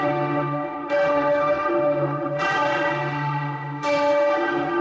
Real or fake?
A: fake